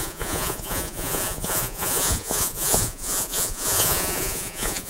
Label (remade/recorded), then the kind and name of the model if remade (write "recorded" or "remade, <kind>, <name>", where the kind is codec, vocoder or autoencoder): remade, vocoder, Vocos